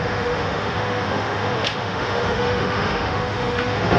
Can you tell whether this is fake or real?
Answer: fake